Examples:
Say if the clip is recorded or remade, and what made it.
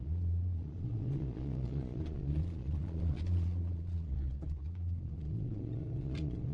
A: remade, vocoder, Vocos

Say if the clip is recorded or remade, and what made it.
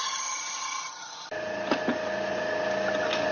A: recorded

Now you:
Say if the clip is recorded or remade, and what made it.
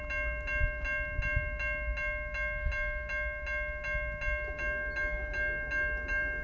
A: recorded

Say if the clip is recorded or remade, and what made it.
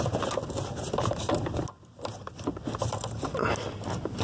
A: recorded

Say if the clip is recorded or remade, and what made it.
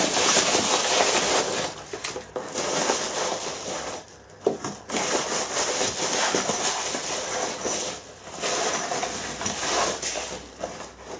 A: recorded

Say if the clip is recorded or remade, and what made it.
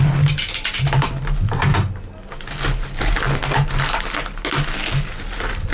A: recorded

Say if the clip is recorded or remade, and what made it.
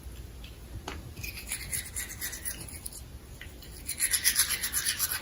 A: recorded